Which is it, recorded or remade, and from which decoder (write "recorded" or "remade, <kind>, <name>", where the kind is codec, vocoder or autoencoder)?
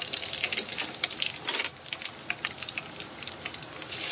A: recorded